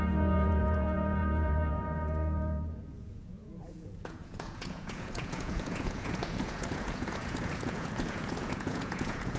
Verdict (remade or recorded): remade